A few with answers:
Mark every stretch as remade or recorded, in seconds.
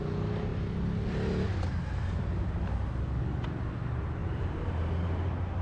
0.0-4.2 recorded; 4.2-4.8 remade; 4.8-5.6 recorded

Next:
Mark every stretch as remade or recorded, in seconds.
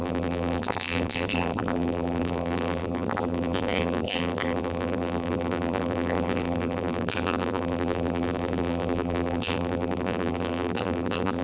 0.0-11.4 remade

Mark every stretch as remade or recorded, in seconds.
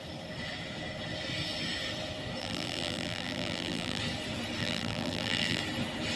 0.0-2.4 recorded; 2.4-4.0 remade; 4.0-4.6 recorded; 4.6-5.6 remade; 5.6-6.2 recorded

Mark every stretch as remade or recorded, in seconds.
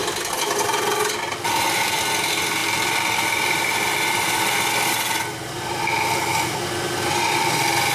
0.0-1.9 remade; 1.9-2.6 recorded; 2.6-5.1 remade; 5.1-7.9 recorded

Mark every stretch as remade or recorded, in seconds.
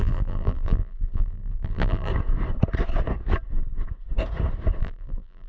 0.0-2.1 remade; 2.1-4.8 recorded; 4.8-5.5 remade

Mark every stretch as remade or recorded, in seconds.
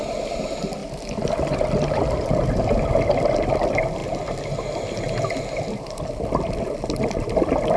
0.0-7.8 recorded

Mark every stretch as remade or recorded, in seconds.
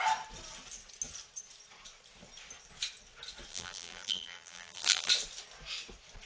0.0-3.5 recorded; 3.5-5.1 remade; 5.1-6.3 recorded